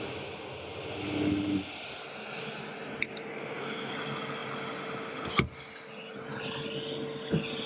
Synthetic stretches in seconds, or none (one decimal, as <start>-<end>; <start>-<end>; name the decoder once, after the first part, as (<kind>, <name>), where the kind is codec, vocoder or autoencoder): 3.3-3.9 (codec, SNAC)

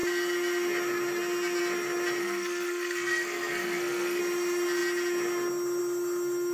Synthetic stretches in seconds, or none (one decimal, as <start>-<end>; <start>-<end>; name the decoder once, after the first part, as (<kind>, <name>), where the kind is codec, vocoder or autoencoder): 2.2-4.2 (codec, SNAC)

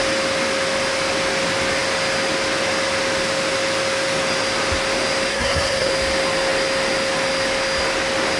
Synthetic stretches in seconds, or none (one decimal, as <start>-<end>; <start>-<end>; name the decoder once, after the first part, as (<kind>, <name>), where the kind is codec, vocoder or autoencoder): 5.3-5.9 (codec, SNAC)